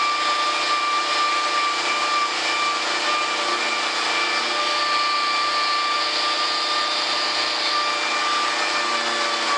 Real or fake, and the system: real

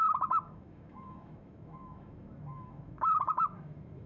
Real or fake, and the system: fake, autoencoder, DAC-VAE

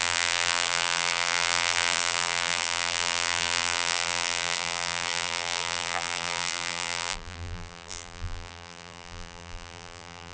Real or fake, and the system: fake, vocoder, BigVGAN v2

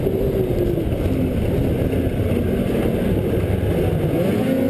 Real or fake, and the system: real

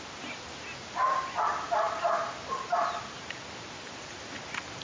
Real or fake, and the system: real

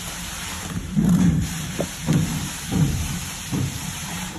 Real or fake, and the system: fake, vocoder, BigVGAN v2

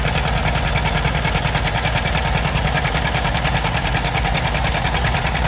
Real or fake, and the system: real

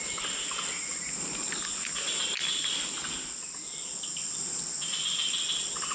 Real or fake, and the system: real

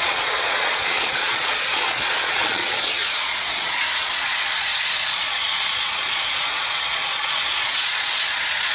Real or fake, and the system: fake, vocoder, Vocos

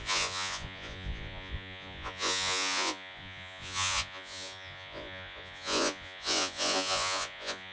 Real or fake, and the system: fake, vocoder, Vocos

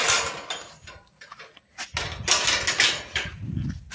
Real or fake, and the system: real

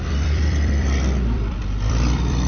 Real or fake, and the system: fake, vocoder, BigVGAN v2